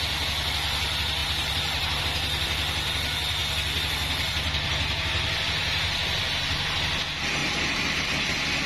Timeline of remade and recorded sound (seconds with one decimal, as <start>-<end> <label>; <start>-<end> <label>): 0.0-1.2 recorded; 1.2-2.0 remade; 2.0-5.6 recorded; 5.6-6.2 remade; 6.2-7.4 recorded; 7.4-7.9 remade; 7.9-8.7 recorded